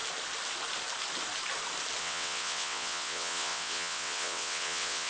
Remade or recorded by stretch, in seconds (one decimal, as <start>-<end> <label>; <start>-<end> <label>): 0.0-2.0 recorded; 2.0-5.1 remade